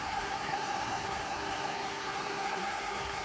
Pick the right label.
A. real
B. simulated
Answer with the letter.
B